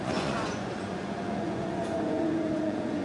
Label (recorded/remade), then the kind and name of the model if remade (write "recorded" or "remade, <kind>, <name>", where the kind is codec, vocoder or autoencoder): remade, vocoder, Vocos